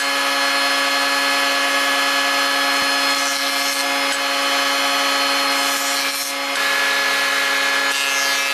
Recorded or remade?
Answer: recorded